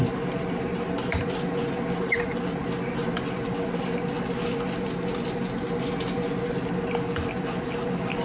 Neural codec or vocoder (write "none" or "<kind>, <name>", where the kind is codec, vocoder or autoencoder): none